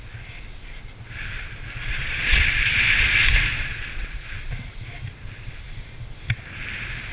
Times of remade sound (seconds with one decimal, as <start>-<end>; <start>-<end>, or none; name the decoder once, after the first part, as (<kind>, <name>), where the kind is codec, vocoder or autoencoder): 1.8-2.5 (vocoder, Vocos); 3.5-4.5